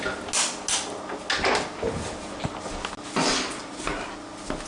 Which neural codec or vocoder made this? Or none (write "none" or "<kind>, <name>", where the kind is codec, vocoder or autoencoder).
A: none